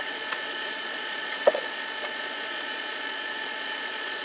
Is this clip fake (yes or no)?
yes